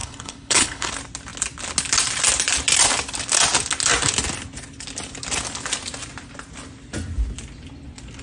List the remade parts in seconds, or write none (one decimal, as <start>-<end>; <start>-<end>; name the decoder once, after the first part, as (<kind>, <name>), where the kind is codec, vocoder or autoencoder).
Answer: 0.0-0.9 (codec, HILCodec)